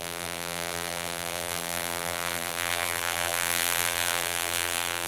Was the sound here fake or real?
fake